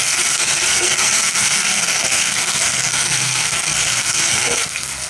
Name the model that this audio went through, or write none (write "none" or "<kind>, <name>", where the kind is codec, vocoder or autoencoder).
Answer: codec, SNAC